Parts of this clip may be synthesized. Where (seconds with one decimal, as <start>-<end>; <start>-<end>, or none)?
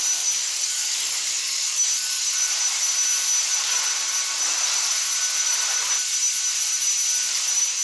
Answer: 0.4-2.5